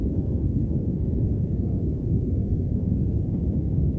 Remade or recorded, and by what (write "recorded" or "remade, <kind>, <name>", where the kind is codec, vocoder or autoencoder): remade, codec, SNAC